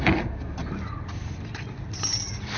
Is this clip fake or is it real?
real